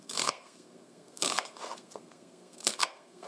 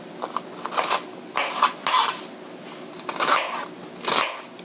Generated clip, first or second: first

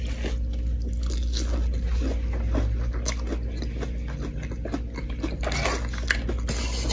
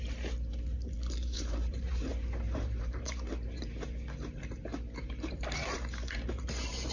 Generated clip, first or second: second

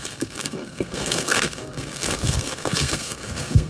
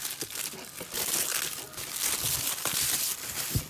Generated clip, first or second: first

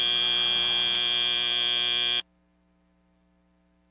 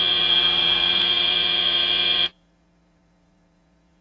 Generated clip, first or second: second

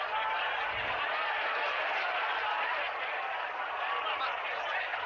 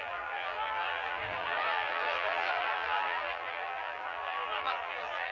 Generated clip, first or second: second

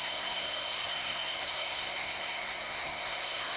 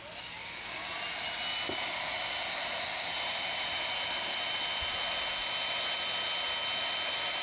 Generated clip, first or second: first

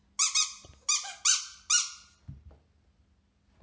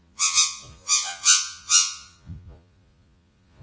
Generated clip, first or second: second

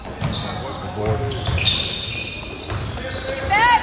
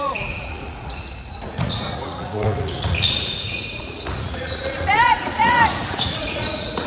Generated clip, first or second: second